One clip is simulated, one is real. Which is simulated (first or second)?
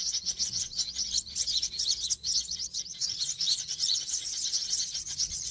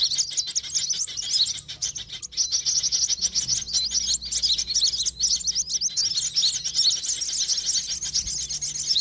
first